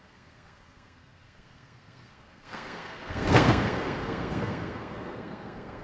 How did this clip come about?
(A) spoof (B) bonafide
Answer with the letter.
A